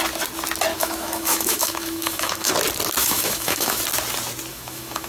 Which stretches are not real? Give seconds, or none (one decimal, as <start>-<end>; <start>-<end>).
0.7-2.5; 3.0-3.8; 4.5-5.1